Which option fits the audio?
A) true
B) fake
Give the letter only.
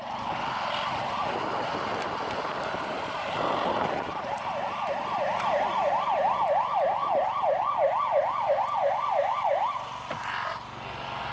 B